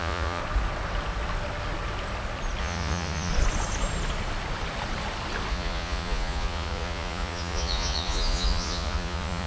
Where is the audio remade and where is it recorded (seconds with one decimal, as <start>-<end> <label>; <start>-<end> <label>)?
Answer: 0.0-0.4 remade; 0.4-2.6 recorded; 2.6-3.3 remade; 3.3-5.5 recorded; 5.5-9.5 remade

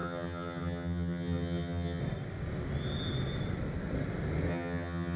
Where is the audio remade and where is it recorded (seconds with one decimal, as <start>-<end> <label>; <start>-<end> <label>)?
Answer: 0.0-2.0 remade; 2.0-4.5 recorded; 4.5-5.2 remade

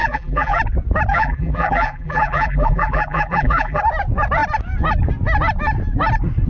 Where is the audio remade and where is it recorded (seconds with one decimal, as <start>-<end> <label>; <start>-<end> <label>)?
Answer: 0.0-0.6 remade; 0.6-1.1 recorded; 1.1-3.8 remade; 3.8-6.5 recorded

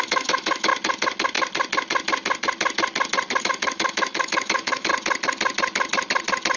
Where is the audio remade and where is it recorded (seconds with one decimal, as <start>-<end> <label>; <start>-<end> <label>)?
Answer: 0.0-0.7 remade; 0.7-3.4 recorded; 3.4-4.9 remade; 4.9-6.6 recorded

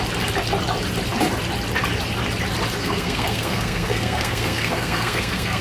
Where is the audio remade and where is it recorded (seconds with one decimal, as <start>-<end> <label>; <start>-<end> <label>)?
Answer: 0.0-2.8 recorded; 2.8-5.6 remade

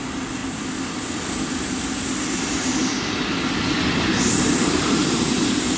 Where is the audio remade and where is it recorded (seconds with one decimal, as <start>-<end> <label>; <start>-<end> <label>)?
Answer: 0.0-0.4 remade; 0.4-3.9 recorded; 3.9-5.8 remade

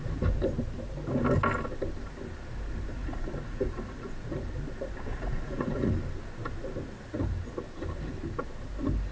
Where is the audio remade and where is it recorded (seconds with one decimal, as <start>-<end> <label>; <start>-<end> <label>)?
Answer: 0.0-3.0 recorded; 3.0-4.1 remade; 4.1-5.1 recorded; 5.1-5.9 remade; 5.9-9.1 recorded

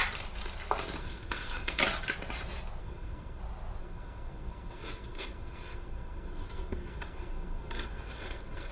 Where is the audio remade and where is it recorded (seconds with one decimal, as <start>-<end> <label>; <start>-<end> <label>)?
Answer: 0.0-1.0 recorded; 1.0-1.8 remade; 1.8-2.8 recorded; 2.8-3.4 remade; 3.4-3.8 recorded; 3.8-8.7 remade